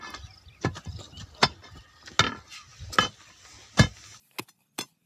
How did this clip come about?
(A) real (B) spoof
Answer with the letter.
A